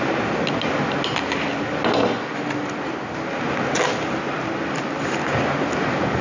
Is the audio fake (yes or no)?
no